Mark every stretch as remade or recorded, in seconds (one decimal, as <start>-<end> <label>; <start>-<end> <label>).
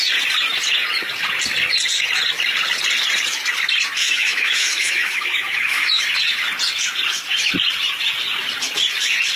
0.0-4.0 recorded; 4.0-6.0 remade; 6.0-9.4 recorded